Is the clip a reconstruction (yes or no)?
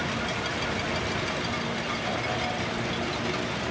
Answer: no